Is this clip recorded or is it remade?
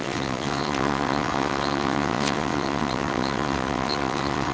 remade